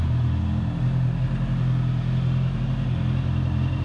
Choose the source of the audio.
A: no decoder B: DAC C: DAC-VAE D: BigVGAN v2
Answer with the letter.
A